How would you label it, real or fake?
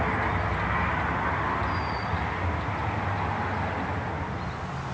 real